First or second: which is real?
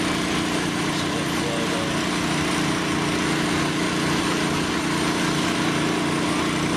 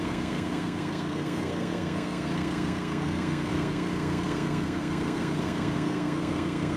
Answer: first